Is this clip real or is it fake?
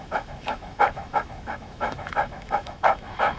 fake